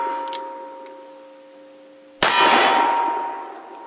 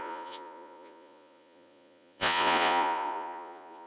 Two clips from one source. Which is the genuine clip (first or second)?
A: first